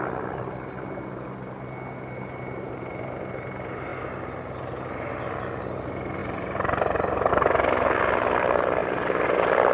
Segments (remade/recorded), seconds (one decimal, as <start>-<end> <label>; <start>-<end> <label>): 0.0-6.2 recorded; 6.2-7.3 remade; 7.3-9.7 recorded